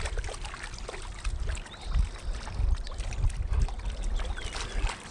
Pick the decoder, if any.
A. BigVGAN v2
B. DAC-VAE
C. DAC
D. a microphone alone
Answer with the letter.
D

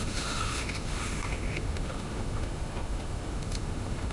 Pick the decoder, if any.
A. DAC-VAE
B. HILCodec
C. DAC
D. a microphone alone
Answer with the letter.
A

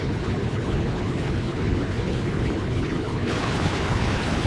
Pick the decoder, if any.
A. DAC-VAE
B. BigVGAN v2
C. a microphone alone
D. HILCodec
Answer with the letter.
D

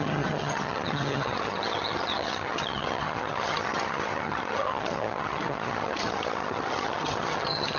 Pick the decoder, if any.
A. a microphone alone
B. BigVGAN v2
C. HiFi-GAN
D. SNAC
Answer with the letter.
C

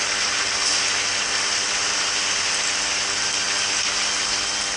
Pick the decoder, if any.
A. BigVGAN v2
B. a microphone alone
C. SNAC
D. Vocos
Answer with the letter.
B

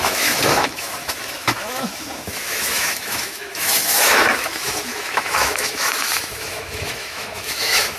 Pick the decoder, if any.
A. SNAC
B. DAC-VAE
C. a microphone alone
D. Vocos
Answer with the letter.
B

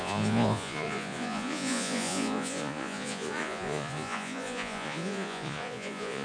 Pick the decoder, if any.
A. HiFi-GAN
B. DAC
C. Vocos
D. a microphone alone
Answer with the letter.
C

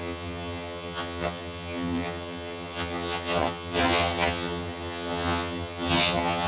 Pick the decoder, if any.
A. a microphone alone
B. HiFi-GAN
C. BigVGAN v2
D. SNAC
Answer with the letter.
B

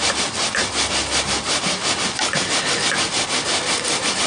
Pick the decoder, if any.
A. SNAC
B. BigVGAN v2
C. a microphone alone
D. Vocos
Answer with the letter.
C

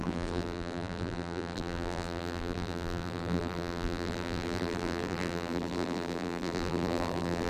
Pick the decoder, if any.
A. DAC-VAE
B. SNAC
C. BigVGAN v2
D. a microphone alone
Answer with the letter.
C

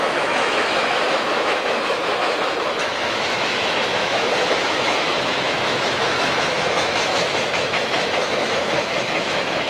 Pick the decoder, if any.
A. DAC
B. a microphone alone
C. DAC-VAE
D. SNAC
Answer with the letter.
C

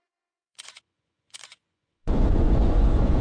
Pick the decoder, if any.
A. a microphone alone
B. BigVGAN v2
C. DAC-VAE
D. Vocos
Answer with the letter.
D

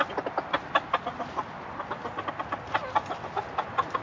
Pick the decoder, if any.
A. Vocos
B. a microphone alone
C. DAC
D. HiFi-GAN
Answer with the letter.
B